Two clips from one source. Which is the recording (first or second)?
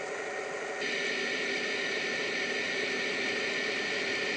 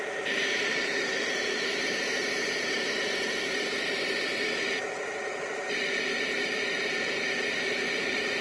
first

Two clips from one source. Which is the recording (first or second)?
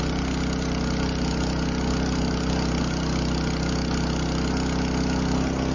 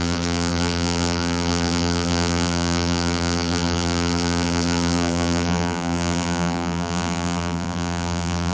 first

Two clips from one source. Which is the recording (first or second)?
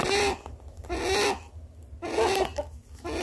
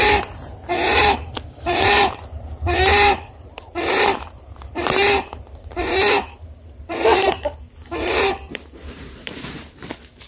first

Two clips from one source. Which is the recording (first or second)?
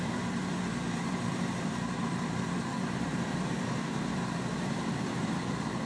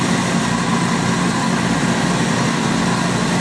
second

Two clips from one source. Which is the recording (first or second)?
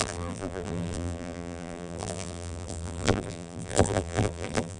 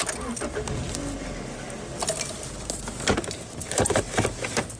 second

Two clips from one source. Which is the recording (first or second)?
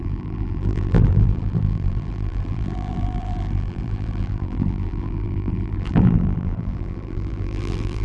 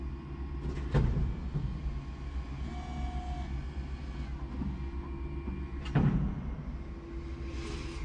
second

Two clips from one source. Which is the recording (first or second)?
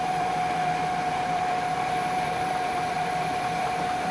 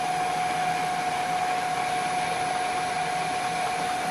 second